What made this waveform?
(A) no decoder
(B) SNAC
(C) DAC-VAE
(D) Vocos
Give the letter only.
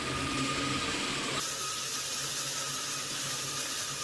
A